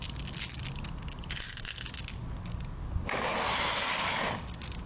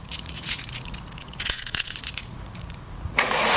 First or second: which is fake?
second